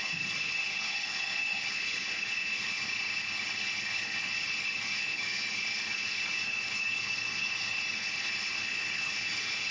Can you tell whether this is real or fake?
fake